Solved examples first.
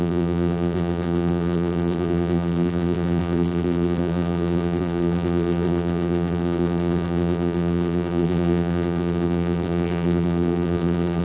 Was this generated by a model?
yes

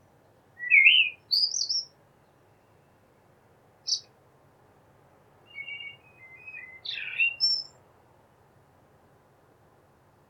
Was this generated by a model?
no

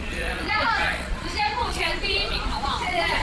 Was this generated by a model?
yes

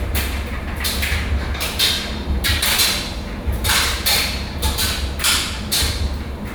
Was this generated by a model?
yes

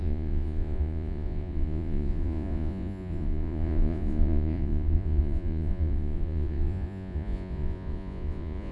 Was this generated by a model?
yes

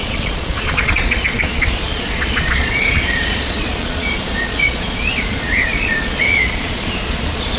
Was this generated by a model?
yes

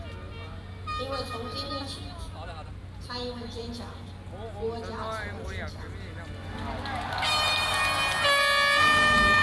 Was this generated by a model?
no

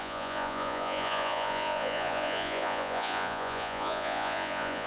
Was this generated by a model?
yes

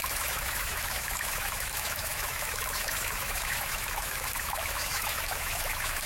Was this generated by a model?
yes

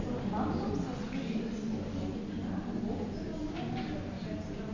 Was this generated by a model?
no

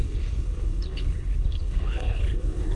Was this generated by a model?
yes